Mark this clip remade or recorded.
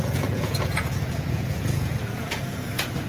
remade